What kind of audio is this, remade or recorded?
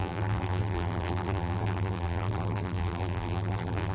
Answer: remade